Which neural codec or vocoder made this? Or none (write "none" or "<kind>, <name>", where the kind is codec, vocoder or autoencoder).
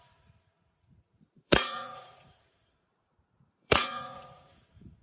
vocoder, Vocos